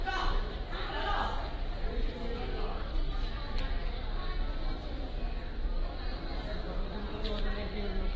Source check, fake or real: real